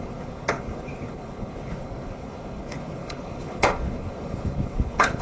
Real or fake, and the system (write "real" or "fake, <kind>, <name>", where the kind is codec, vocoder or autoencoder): fake, codec, HILCodec